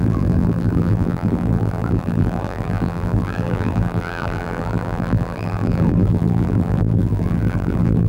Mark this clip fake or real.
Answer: fake